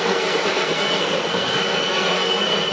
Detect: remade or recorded remade